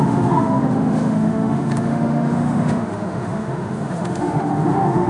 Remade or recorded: remade